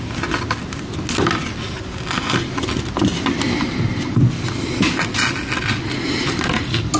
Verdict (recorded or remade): recorded